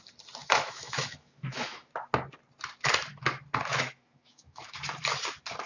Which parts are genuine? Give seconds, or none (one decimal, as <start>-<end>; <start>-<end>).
0.0-0.4; 1.9-3.7; 4.8-5.7